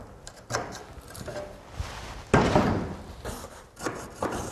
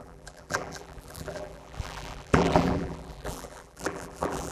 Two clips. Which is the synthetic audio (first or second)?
second